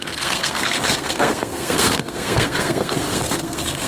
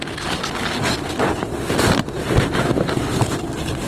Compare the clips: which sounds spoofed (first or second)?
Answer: first